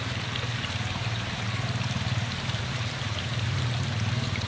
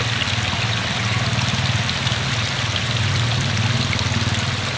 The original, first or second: second